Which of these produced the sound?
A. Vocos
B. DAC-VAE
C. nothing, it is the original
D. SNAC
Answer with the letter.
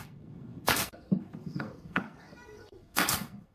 D